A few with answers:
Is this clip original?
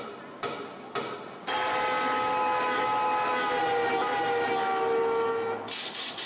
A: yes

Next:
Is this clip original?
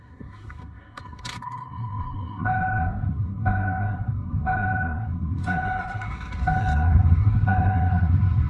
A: no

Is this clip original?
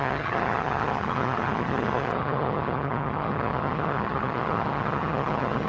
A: no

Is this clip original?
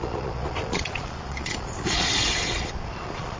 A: no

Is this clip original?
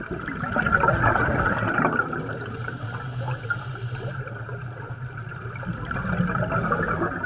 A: yes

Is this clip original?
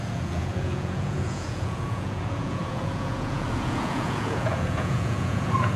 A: no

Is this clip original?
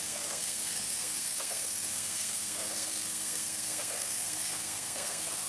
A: no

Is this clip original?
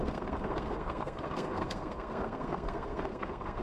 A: no